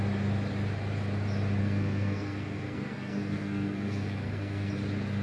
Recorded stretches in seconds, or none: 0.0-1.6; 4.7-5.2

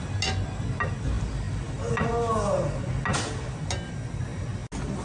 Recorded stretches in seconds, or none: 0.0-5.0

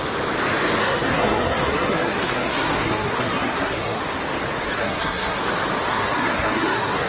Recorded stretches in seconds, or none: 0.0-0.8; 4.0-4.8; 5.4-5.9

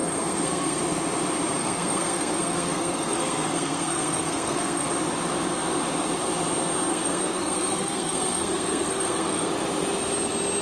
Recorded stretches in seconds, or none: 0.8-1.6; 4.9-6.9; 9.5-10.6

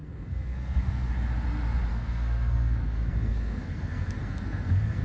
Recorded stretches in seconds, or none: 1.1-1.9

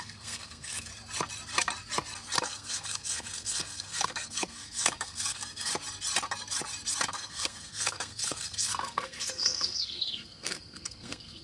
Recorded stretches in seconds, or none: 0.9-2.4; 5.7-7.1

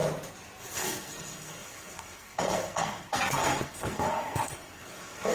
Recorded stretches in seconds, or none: 0.0-0.6

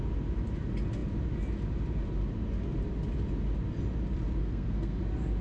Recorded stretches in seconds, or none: 0.0-4.4; 5.0-5.4